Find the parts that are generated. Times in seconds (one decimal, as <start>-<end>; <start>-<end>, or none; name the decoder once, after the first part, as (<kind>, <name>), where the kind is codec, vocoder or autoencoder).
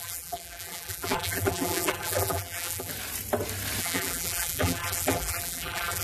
0.0-2.9 (vocoder, BigVGAN v2); 3.8-6.0